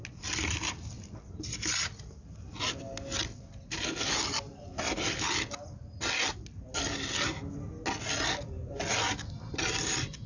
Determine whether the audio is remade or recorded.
recorded